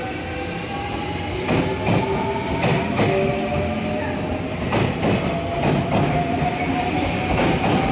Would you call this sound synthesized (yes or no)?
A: no